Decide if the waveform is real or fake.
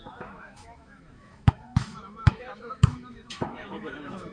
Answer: fake